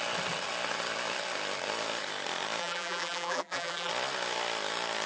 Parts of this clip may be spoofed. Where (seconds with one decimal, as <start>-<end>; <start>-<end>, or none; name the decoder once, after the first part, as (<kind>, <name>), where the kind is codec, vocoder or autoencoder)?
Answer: 2.6-3.9 (vocoder, BigVGAN v2)